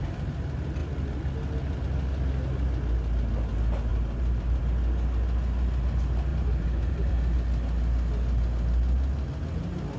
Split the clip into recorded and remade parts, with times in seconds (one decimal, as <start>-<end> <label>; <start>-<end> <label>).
0.0-3.9 recorded; 3.9-4.6 remade; 4.6-6.3 recorded; 6.3-7.1 remade; 7.1-10.0 recorded